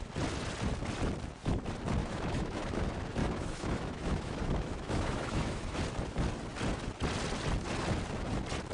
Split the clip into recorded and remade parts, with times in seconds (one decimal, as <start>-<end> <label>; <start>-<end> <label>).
0.0-2.0 recorded; 2.0-2.8 remade; 2.8-3.2 recorded; 3.2-5.8 remade; 5.8-8.7 recorded